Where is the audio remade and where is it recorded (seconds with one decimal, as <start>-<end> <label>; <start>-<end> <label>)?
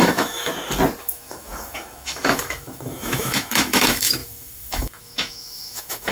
0.0-0.5 remade; 0.5-1.0 recorded; 1.0-6.1 remade